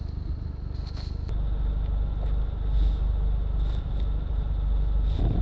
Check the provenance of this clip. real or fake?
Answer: real